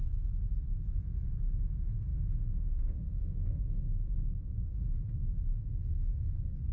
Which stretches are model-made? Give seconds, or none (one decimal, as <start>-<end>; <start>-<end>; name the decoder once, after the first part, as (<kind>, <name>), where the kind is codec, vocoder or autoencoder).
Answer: 2.1-6.1 (autoencoder, DAC-VAE)